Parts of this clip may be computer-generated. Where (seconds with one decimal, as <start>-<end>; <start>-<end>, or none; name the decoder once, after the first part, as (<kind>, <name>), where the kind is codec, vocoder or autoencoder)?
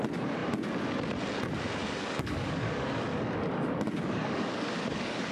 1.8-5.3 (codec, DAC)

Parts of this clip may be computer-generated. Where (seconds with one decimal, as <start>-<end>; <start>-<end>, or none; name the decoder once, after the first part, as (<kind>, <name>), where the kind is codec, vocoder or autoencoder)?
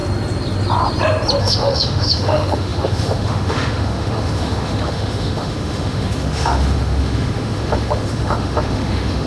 1.4-9.3 (autoencoder, DAC-VAE)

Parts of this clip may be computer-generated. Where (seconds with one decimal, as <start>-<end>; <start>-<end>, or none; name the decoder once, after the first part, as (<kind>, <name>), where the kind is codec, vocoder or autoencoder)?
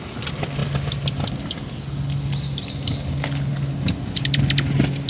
none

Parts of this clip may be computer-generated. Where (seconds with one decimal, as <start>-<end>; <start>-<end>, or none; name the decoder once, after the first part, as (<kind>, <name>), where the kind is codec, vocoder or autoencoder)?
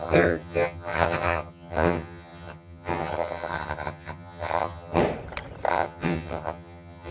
0.0-5.0 (vocoder, HiFi-GAN); 5.7-7.1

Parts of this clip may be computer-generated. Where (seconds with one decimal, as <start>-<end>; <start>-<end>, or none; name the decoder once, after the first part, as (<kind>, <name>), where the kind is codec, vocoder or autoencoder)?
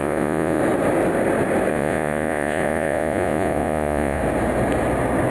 0.0-0.6 (vocoder, Vocos); 1.7-4.2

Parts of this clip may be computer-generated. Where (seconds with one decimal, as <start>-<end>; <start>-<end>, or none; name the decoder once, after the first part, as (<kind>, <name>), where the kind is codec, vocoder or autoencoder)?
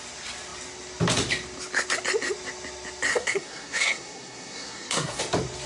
3.1-5.2 (codec, SNAC)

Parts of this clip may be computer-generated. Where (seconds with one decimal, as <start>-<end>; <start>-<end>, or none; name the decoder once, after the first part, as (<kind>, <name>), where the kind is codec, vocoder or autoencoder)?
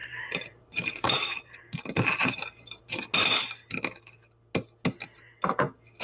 0.0-1.6 (vocoder, BigVGAN v2); 2.2-3.0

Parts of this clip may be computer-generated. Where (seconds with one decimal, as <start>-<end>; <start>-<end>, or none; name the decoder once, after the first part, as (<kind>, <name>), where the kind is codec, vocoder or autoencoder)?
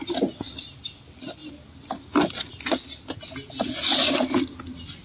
none